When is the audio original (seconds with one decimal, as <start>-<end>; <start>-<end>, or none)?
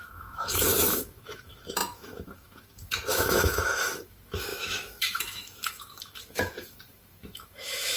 none